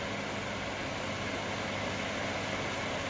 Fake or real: real